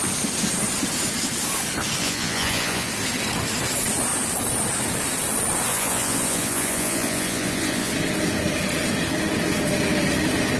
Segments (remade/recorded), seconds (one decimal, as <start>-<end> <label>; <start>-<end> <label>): 0.0-2.0 recorded; 2.0-2.9 remade; 2.9-5.7 recorded; 5.7-7.9 remade; 7.9-10.6 recorded